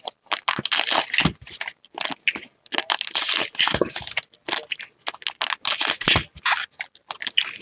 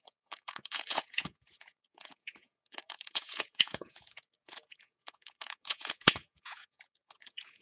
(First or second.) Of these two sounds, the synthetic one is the second